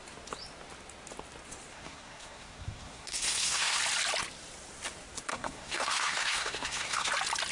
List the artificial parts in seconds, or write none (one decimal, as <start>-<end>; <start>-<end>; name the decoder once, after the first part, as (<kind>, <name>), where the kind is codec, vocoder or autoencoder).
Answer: 1.7-3.8 (codec, SNAC); 5.3-7.1